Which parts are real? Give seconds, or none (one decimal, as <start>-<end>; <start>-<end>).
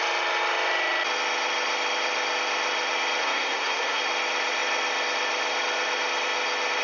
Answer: 0.0-3.2; 4.0-6.8